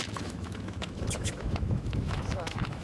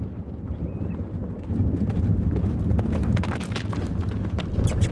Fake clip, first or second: first